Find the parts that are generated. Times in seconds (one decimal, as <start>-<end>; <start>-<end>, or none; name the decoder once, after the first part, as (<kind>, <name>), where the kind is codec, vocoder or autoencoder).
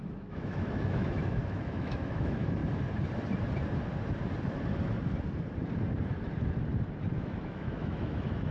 0.0-2.6 (autoencoder, DAC-VAE); 7.2-8.5